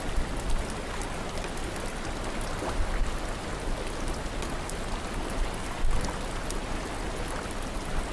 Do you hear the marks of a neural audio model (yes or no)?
no